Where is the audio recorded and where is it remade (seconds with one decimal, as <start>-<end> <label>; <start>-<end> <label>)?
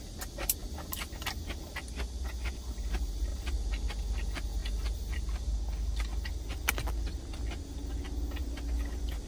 0.0-0.6 recorded; 0.6-1.1 remade; 1.1-8.4 recorded; 8.4-9.3 remade